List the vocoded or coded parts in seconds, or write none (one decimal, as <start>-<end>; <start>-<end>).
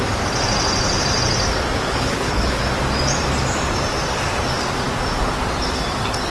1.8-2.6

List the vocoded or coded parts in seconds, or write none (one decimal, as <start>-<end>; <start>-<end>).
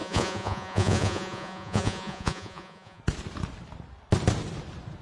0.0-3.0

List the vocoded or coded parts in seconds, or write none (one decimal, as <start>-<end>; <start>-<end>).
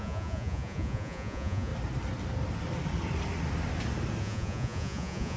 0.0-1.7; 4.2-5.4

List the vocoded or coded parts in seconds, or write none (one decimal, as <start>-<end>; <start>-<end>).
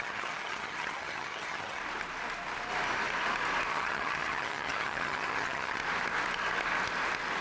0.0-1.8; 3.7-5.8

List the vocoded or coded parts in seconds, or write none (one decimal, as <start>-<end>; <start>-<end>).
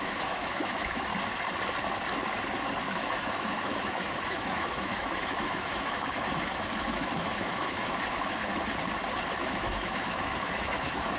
0.0-1.1; 2.8-8.5; 9.3-11.2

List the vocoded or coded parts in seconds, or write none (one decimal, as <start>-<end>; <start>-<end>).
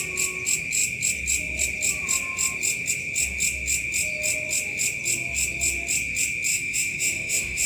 6.5-7.7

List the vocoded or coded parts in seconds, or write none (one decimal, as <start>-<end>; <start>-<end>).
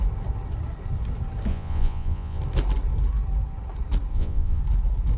1.5-2.4; 4.1-4.6